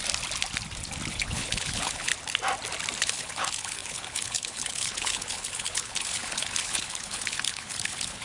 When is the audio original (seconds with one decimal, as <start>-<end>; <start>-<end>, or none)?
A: 0.0-1.1; 2.1-3.0